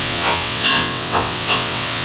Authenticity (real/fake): fake